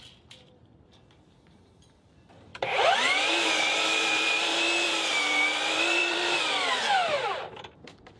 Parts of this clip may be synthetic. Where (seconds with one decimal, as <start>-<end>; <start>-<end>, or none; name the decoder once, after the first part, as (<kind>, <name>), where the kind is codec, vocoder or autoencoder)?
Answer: 0.0-8.2 (vocoder, BigVGAN v2)